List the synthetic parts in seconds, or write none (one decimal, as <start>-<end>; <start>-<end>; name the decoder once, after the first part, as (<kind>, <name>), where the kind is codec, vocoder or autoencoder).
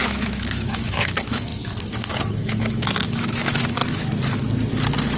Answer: 0.0-3.8 (autoencoder, DAC-VAE)